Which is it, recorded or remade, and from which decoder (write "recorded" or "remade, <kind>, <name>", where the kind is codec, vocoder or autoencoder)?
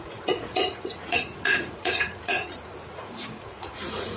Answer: remade, vocoder, Vocos